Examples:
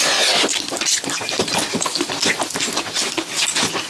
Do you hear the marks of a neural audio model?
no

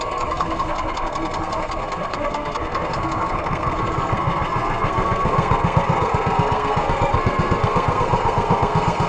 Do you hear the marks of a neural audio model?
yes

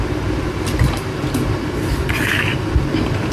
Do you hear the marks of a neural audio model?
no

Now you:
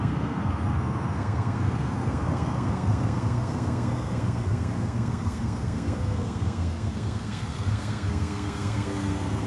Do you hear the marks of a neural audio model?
yes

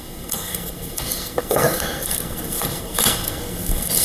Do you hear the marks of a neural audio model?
yes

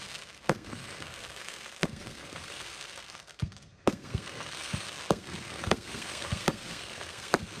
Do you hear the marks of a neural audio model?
yes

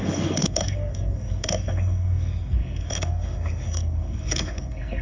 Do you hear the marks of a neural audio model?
yes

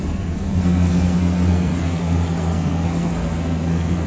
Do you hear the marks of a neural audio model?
yes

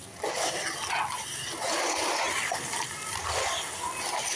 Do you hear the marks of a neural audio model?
no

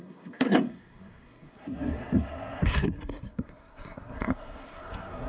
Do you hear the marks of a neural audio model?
yes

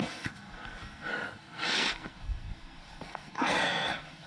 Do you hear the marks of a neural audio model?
yes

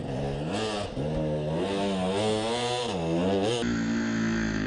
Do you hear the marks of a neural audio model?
no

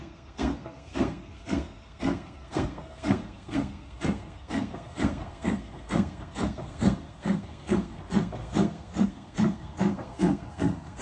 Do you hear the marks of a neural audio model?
yes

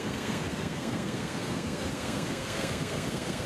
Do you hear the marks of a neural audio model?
yes